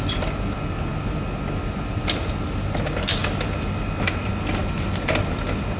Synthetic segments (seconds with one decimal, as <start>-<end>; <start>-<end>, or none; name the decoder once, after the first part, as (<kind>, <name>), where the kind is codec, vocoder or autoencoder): none